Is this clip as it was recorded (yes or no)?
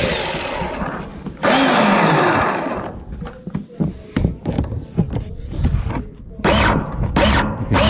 yes